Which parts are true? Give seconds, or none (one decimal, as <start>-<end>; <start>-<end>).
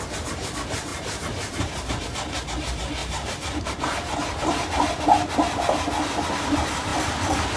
0.0-0.9; 2.0-3.0; 4.8-7.6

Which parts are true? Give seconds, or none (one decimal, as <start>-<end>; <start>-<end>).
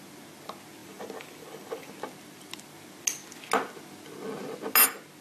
0.0-0.8; 1.9-5.2